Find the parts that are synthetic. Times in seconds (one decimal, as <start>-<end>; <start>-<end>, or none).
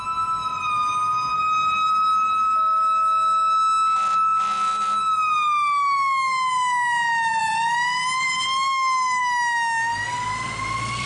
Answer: none